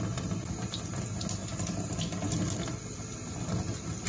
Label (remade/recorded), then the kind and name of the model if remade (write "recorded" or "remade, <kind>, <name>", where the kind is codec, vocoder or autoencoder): recorded